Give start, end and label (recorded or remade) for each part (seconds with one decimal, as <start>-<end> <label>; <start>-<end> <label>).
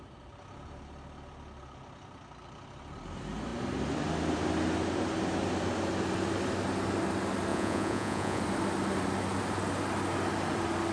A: 0.0-7.5 recorded; 7.5-8.4 remade; 8.4-10.9 recorded